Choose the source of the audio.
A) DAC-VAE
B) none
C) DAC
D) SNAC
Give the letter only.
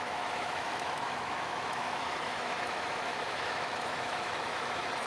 A